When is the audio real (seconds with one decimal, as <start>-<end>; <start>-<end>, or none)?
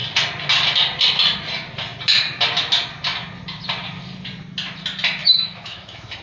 0.0-5.2